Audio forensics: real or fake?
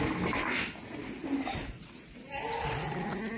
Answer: real